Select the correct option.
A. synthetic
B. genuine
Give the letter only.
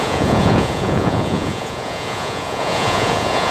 A